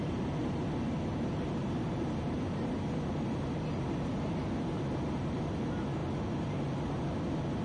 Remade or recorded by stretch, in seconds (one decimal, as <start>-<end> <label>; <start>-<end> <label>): 0.0-7.6 recorded